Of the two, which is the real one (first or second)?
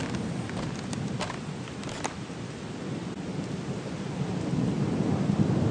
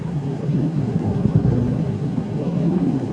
first